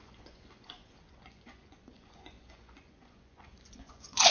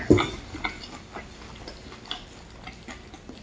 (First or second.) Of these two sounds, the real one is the second